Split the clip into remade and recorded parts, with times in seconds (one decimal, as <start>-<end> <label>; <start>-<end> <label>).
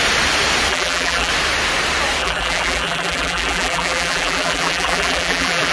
0.0-0.7 recorded; 0.7-1.3 remade; 1.3-2.2 recorded; 2.2-5.7 remade